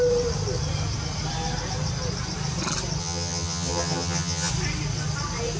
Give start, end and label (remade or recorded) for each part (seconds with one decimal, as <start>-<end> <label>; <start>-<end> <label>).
0.0-3.0 recorded; 3.0-4.5 remade; 4.5-5.6 recorded